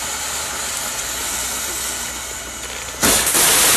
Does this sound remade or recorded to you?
recorded